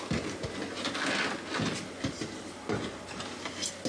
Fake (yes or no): no